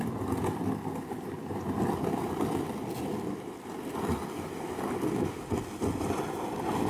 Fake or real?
real